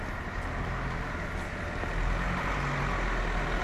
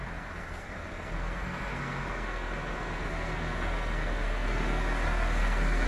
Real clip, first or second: first